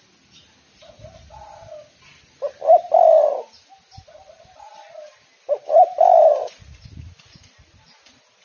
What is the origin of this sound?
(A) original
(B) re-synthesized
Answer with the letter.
A